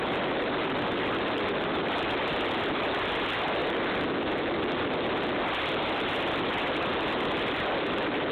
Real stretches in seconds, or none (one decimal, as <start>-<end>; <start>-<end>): 3.6-4.6